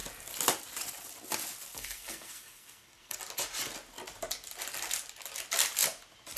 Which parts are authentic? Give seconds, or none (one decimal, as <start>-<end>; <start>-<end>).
0.0-1.7; 3.2-6.4